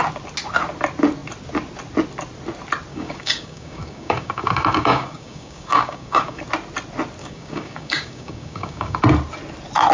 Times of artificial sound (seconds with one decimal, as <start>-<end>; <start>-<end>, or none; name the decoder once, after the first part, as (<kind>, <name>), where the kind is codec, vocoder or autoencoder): 2.9-6.4 (codec, DAC); 7.2-9.0